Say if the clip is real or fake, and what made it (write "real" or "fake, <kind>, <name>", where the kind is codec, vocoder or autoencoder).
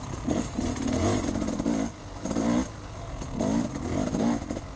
real